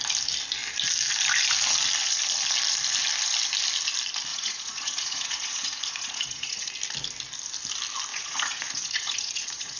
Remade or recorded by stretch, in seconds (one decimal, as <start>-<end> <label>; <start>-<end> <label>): 0.0-4.3 recorded; 4.3-6.7 remade; 6.7-8.1 recorded; 8.1-9.8 remade